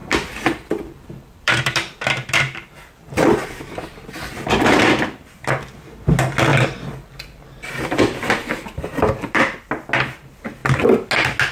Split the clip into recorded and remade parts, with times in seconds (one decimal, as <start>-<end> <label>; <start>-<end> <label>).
0.0-4.4 remade; 4.4-6.5 recorded; 6.5-9.7 remade; 9.7-11.5 recorded